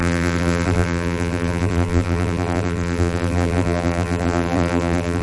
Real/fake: fake